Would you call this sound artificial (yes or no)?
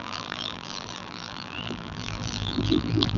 yes